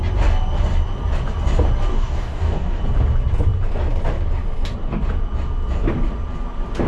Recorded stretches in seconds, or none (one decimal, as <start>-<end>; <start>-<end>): 0.0-1.9; 2.8-6.9